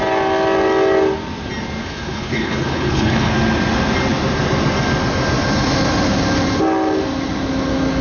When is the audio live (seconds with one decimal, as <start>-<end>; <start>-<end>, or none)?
0.0-1.8; 3.3-8.0